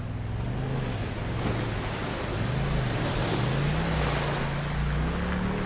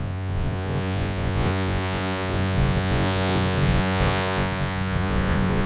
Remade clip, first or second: second